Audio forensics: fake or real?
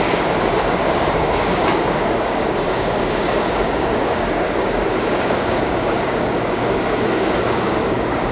fake